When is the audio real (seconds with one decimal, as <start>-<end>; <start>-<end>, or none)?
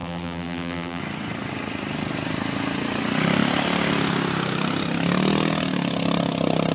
1.0-6.7